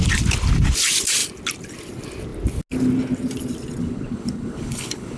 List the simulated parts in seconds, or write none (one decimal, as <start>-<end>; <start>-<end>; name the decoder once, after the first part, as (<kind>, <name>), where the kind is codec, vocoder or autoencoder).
3.8-5.2 (codec, HILCodec)